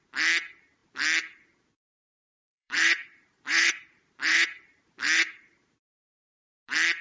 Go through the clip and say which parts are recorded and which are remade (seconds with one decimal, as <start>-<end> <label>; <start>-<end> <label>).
0.0-2.3 recorded; 2.3-5.8 remade; 5.8-7.0 recorded